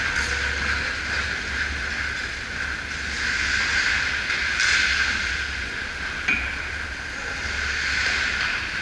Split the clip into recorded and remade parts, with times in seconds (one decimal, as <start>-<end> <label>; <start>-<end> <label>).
0.0-8.8 recorded